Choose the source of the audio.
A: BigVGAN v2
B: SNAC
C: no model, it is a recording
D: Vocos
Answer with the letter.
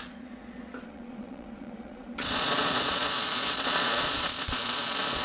D